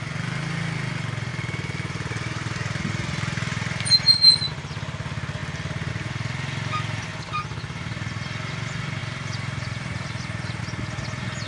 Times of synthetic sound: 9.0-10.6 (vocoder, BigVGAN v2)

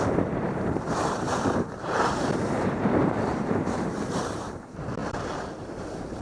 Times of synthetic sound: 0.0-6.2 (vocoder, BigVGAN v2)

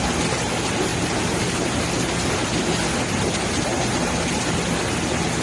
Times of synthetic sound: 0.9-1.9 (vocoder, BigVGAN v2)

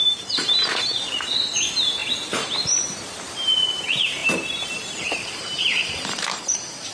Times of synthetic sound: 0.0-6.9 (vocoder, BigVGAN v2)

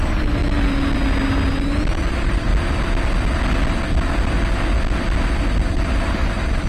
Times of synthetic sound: 0.0-0.4 (vocoder, BigVGAN v2); 2.1-2.5; 6.1-6.7

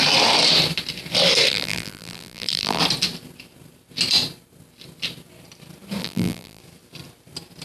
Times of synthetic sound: 1.5-2.8 (vocoder, BigVGAN v2); 6.0-6.6